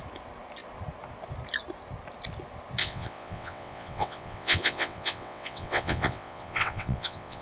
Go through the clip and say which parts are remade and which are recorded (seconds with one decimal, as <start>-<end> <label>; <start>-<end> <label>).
0.0-2.8 recorded; 2.8-7.4 remade